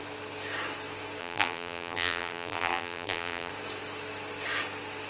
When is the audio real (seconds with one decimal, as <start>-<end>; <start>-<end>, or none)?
0.0-1.2; 3.5-5.1